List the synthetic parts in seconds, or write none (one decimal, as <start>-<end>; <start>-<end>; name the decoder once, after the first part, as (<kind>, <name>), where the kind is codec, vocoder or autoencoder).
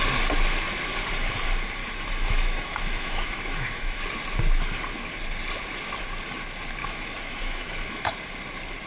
1.8-4.0 (autoencoder, DAC-VAE); 6.8-8.3